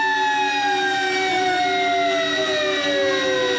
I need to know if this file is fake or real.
real